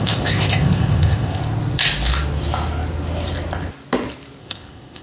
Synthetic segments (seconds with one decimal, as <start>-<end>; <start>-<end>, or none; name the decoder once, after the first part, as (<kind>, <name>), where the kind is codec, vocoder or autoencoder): 0.0-1.4 (codec, ZipCodec); 4.4-5.0